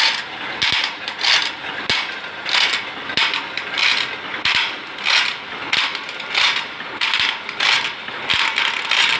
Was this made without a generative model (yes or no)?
yes